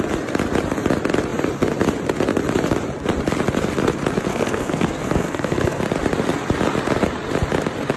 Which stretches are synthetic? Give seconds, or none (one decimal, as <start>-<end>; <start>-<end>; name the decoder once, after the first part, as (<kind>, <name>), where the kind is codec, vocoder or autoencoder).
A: 4.3-5.8 (codec, SNAC)